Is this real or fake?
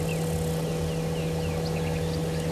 real